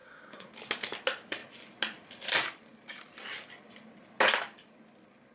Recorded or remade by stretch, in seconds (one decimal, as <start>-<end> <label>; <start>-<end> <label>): 0.0-0.5 remade; 0.5-5.3 recorded